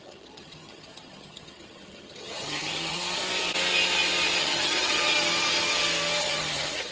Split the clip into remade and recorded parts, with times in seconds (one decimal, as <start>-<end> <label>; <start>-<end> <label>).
0.0-3.2 remade; 3.2-4.4 recorded; 4.4-5.1 remade; 5.1-6.2 recorded; 6.2-6.9 remade